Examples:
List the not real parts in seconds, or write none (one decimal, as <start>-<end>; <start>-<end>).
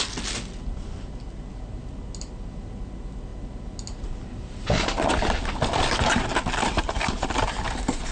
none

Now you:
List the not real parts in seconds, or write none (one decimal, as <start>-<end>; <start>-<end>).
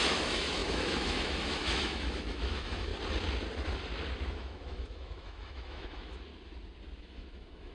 0.0-2.9; 4.3-6.3; 7.0-7.7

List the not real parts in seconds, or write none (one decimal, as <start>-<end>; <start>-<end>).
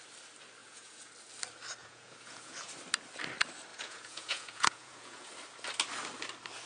0.6-1.1; 1.8-2.7; 3.7-5.3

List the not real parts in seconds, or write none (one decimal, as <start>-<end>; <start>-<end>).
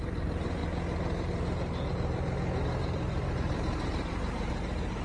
0.0-0.6; 1.9-5.0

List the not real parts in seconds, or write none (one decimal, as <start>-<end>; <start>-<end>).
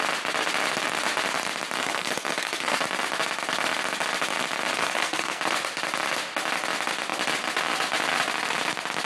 1.8-2.8; 4.7-5.4